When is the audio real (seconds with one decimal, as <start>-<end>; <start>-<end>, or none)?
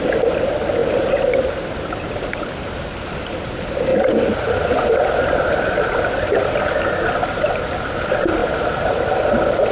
0.0-9.7